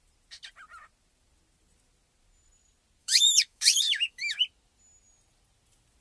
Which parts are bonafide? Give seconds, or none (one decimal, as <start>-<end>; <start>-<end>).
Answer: 0.0-3.0; 4.4-6.0